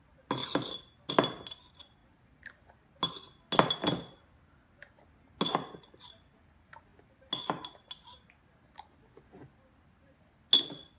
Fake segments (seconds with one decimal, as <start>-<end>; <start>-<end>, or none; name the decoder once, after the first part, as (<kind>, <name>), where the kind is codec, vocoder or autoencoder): none